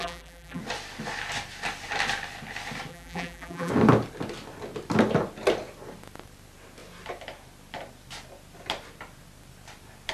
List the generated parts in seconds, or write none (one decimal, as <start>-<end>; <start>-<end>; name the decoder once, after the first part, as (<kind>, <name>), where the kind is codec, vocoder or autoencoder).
0.0-0.6 (vocoder, BigVGAN v2); 2.9-3.7